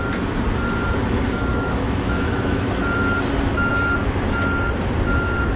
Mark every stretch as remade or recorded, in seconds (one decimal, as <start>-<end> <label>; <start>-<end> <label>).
0.0-1.5 recorded; 1.5-2.7 remade; 2.7-5.6 recorded